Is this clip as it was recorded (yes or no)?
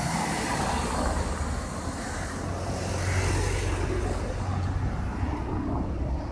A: yes